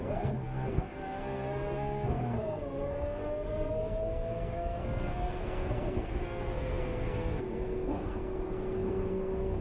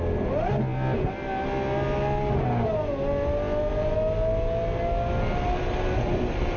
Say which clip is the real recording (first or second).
second